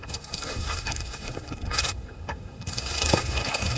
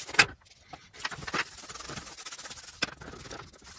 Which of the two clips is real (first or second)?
second